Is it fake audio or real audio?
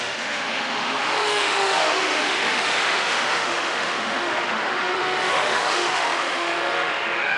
fake